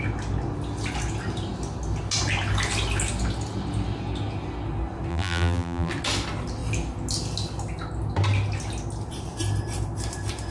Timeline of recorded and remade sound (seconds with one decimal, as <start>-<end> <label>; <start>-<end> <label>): 0.0-5.1 recorded; 5.1-5.9 remade; 5.9-10.5 recorded